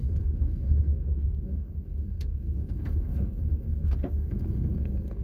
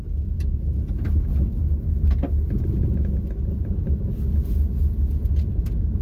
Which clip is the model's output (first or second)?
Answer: first